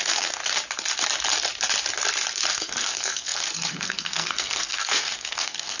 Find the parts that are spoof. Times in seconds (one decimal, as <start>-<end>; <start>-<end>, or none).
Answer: 0.0-0.4; 2.5-5.8